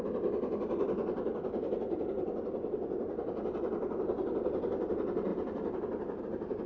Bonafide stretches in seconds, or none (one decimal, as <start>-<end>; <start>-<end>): none